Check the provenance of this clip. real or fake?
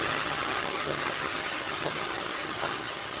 fake